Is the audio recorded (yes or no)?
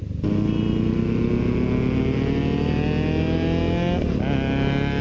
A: yes